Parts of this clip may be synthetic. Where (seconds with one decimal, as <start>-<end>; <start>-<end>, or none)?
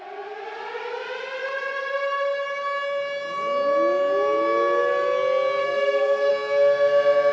5.6-6.3